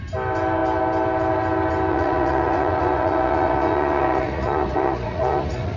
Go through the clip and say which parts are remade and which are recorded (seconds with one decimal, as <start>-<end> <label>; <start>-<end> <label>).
0.0-1.9 recorded; 1.9-5.8 remade